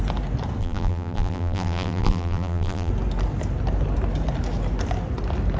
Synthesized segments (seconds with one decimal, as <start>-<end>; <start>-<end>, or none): 0.6-2.9